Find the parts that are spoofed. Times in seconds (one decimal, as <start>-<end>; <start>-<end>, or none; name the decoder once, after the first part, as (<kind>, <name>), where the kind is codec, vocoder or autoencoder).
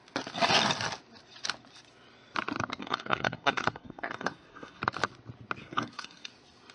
2.8-4.8 (codec, SNAC); 5.6-6.3